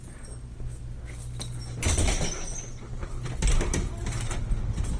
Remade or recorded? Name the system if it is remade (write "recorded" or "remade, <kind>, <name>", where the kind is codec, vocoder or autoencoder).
recorded